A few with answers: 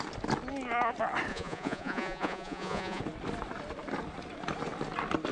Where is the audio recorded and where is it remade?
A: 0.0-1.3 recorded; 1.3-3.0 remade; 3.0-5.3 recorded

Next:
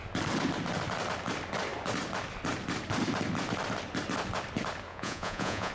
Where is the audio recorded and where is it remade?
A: 0.0-4.9 recorded; 4.9-5.7 remade

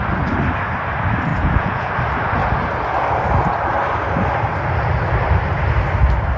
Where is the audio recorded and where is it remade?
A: 0.0-1.3 recorded; 1.3-1.9 remade; 1.9-6.4 recorded